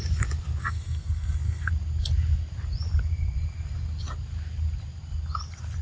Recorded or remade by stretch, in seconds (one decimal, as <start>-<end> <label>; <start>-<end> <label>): 0.0-0.6 recorded; 0.6-1.7 remade; 1.7-5.8 recorded

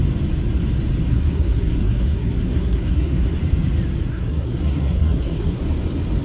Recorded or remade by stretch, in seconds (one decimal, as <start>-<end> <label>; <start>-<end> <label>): 0.0-1.1 recorded; 1.1-3.4 remade; 3.4-4.1 recorded; 4.1-5.6 remade; 5.6-6.2 recorded

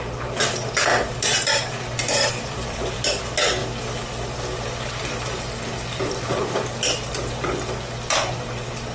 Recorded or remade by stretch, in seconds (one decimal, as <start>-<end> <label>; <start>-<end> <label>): 0.0-0.9 recorded; 0.9-3.2 remade; 3.2-8.9 recorded

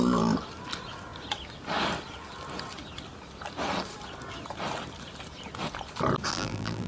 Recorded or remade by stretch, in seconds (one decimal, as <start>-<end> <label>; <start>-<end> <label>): 0.0-6.3 recorded; 6.3-6.9 remade

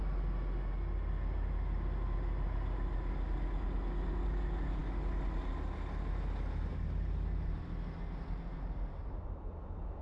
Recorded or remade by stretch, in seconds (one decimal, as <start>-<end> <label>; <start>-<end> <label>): 0.0-10.0 recorded

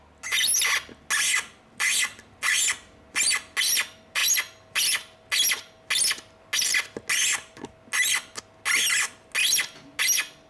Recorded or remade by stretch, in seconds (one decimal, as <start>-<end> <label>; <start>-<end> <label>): 0.0-10.5 recorded